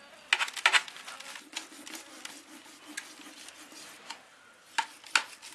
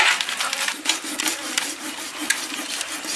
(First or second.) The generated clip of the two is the second